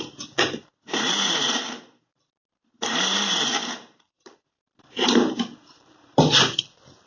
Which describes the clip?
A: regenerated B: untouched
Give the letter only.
A